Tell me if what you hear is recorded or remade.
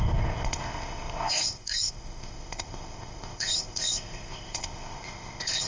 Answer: remade